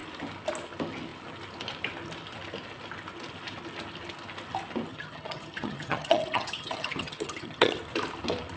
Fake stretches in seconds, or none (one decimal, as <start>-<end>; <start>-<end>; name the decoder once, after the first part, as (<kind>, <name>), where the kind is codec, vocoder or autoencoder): 4.9-7.8 (vocoder, HiFi-GAN)